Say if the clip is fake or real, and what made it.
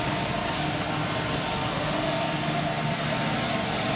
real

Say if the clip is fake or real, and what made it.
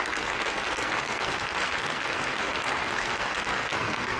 fake, codec, SNAC